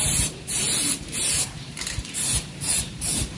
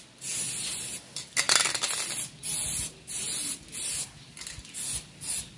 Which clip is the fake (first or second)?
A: first